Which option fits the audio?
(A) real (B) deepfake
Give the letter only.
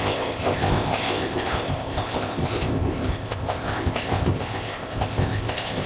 B